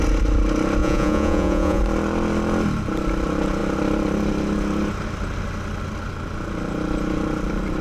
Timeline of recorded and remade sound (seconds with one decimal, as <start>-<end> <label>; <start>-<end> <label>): 0.0-0.8 recorded; 0.8-1.8 remade; 1.8-7.8 recorded

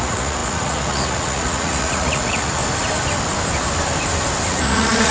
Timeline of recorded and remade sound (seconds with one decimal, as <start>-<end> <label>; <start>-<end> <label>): 0.0-2.6 remade; 2.6-4.5 recorded; 4.5-5.1 remade

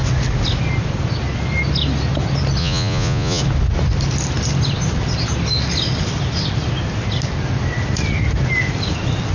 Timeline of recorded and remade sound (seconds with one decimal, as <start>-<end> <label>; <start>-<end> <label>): 0.0-2.6 recorded; 2.6-3.4 remade; 3.4-9.3 recorded

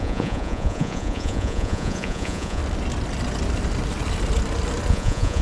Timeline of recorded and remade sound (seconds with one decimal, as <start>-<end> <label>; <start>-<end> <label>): 0.0-2.6 remade; 2.6-4.9 recorded; 4.9-5.4 remade

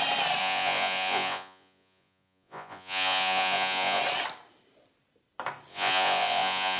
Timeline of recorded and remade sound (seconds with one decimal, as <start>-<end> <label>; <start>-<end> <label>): 0.0-0.4 recorded; 0.4-4.0 remade; 4.0-5.7 recorded; 5.7-6.8 remade

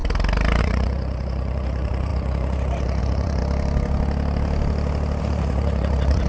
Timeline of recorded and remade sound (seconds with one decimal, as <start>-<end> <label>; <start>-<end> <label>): 0.0-0.6 recorded; 0.6-3.4 remade; 3.4-5.2 recorded; 5.2-6.3 remade